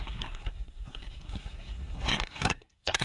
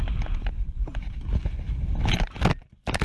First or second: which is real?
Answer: second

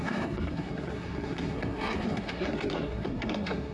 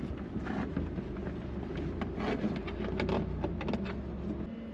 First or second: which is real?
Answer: second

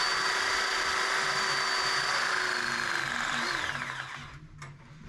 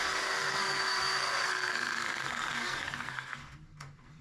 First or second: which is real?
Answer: first